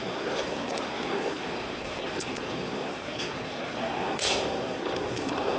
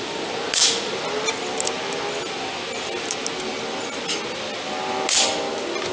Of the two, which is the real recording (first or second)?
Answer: second